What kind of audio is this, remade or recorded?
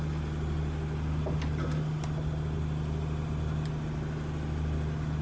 recorded